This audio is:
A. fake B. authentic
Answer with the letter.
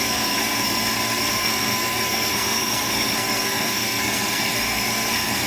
A